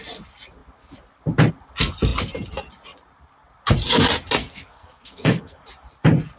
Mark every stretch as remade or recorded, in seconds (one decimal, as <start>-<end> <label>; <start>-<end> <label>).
0.0-4.4 recorded; 4.4-5.6 remade; 5.6-6.4 recorded